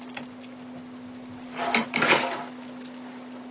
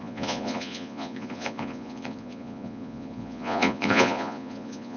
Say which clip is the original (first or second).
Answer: first